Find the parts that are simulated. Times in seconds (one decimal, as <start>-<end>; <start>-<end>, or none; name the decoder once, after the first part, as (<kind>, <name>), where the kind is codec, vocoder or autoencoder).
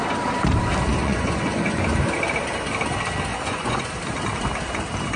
1.0-1.8 (vocoder, Vocos); 3.3-3.9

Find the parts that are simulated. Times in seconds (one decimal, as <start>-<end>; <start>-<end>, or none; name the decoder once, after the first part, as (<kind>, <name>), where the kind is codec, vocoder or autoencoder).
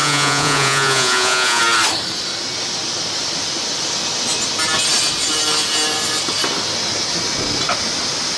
0.0-1.6 (vocoder, Vocos)